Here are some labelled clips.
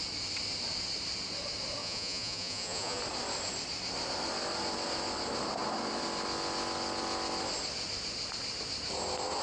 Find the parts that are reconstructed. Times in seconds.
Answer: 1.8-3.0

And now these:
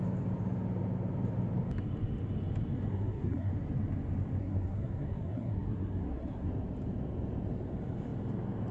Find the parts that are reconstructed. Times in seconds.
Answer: 2.9-3.5; 4.4-6.5

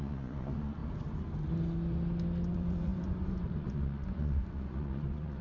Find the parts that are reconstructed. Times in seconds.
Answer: 0.0-0.8; 2.5-5.4